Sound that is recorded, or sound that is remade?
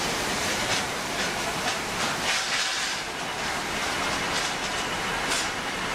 remade